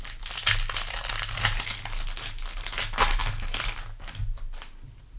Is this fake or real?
real